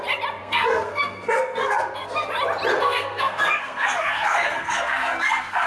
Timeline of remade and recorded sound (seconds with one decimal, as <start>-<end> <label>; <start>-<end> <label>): 0.0-0.4 recorded; 0.4-2.3 remade; 2.3-2.7 recorded; 2.7-5.7 remade